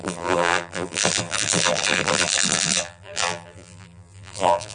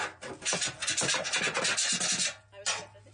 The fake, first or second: first